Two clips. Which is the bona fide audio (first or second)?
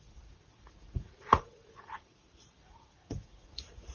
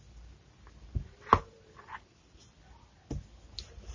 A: second